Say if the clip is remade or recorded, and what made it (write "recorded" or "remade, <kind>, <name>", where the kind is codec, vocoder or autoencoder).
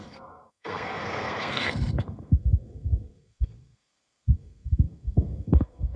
remade, codec, SNAC